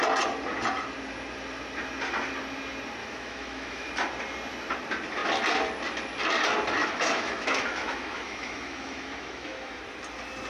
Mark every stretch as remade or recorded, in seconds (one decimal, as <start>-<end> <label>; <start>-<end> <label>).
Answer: 0.0-3.0 recorded; 3.0-3.9 remade; 3.9-6.8 recorded; 6.8-9.8 remade; 9.8-10.5 recorded